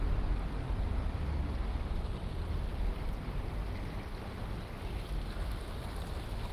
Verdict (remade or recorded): recorded